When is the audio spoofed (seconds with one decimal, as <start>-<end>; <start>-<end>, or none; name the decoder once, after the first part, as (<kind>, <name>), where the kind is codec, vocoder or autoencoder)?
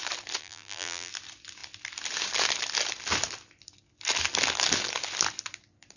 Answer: 0.4-1.1 (vocoder, BigVGAN v2)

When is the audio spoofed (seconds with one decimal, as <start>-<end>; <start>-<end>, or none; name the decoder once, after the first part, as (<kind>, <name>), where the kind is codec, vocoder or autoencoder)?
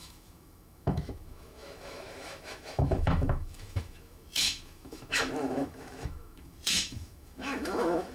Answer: 0.0-8.1 (autoencoder, DAC-VAE)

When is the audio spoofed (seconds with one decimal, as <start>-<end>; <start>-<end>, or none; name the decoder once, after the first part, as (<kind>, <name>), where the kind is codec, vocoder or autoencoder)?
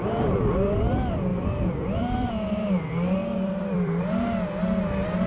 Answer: 1.3-2.3 (vocoder, BigVGAN v2); 3.2-4.1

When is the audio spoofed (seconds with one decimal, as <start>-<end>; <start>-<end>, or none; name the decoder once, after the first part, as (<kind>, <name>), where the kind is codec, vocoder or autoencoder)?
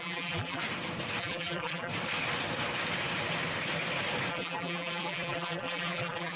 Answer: 0.0-0.6 (vocoder, BigVGAN v2); 1.2-1.9; 4.3-6.4